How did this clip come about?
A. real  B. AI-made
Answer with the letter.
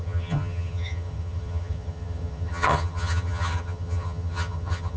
B